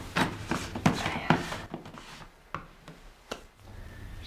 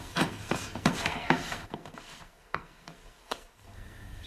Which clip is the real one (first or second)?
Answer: first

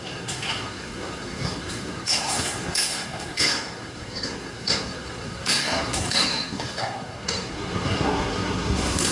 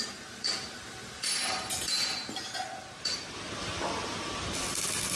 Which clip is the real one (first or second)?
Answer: second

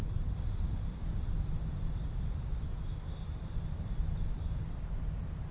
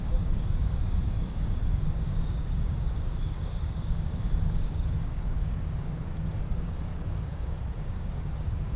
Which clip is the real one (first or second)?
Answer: first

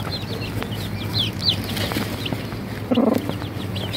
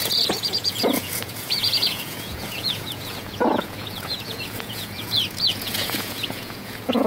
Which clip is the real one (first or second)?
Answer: first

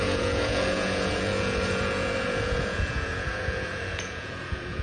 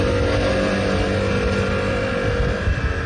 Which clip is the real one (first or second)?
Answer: second